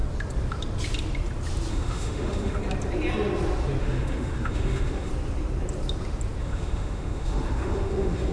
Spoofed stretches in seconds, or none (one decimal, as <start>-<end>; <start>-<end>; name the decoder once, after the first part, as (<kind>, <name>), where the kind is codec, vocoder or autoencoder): 1.7-2.6 (autoencoder, DAC-VAE); 3.8-5.1; 6.4-8.3